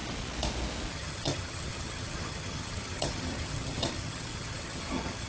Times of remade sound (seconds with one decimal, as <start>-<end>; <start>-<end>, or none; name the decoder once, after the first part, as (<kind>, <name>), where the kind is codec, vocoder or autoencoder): 0.9-5.3 (vocoder, HiFi-GAN)